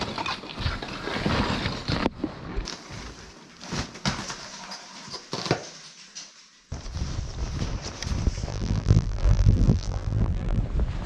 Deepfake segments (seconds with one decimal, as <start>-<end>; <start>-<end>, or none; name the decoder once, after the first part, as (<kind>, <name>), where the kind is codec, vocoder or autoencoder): 8.5-10.6 (vocoder, BigVGAN v2)